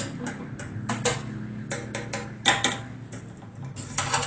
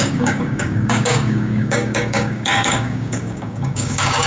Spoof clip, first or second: second